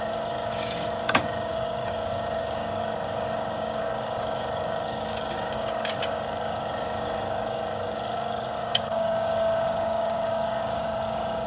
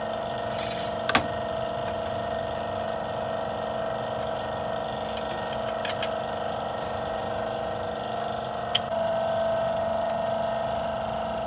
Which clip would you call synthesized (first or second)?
first